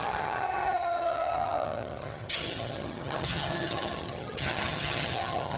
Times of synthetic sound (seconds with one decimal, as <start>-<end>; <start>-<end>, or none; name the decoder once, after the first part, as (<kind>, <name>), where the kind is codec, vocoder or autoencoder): 0.0-5.6 (vocoder, HiFi-GAN)